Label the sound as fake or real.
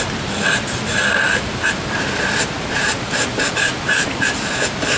fake